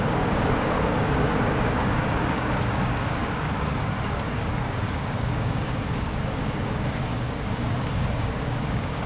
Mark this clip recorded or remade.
remade